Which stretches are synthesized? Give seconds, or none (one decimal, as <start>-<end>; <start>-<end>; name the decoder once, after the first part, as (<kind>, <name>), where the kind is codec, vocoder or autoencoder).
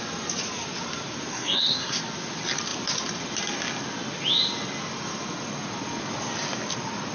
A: 1.3-2.0 (codec, SNAC)